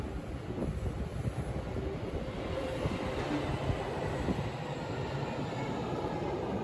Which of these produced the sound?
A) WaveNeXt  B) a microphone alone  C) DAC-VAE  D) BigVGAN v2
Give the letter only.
B